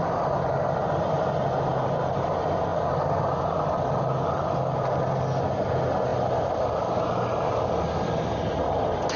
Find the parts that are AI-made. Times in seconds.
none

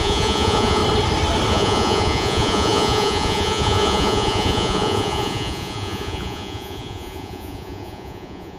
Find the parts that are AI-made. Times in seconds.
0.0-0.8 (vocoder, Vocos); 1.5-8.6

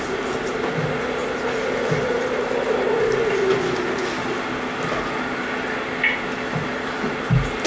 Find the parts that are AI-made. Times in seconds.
none

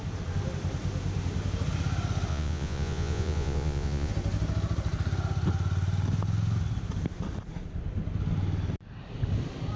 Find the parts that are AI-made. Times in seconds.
2.3-4.1 (vocoder, Vocos)

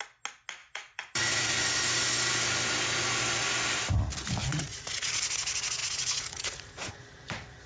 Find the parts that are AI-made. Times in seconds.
0.6-1.5 (vocoder, Vocos); 4.4-5.1; 5.8-6.9